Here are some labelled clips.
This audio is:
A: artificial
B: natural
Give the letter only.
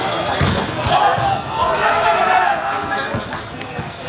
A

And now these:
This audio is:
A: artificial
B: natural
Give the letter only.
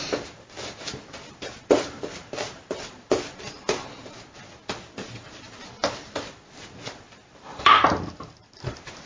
B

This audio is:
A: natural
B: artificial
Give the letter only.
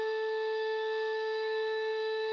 B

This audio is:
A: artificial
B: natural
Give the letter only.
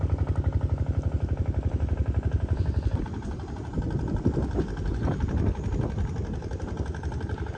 B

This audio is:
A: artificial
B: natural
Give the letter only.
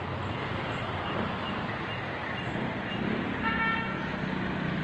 B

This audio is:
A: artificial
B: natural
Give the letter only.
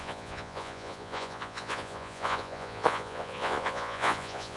A